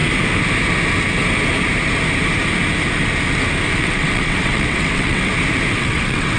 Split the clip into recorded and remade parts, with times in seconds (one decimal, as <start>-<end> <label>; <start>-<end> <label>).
0.0-3.8 recorded; 3.8-5.3 remade; 5.3-5.8 recorded; 5.8-6.4 remade